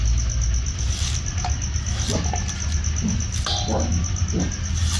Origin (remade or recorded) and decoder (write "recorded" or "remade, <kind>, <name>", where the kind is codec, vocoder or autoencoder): recorded